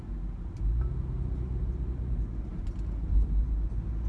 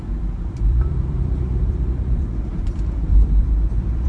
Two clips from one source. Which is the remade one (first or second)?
second